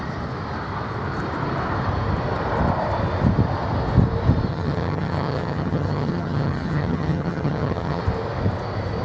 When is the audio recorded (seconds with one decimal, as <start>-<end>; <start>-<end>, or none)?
0.0-4.5; 8.0-9.0